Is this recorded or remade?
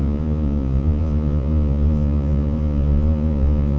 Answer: remade